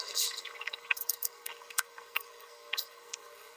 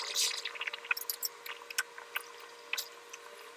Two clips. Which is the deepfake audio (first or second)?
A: first